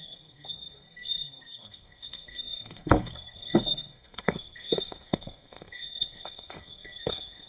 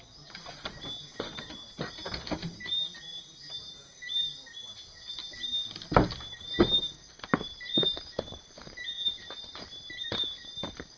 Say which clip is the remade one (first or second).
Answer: first